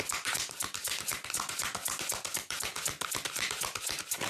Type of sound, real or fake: fake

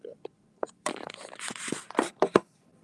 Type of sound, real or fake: fake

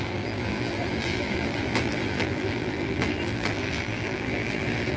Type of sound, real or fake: fake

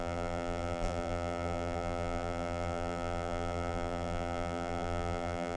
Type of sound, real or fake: fake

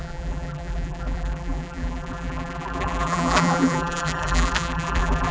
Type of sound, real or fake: fake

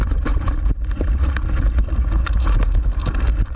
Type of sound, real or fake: fake